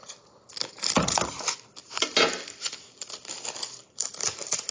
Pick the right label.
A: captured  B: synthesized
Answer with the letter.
A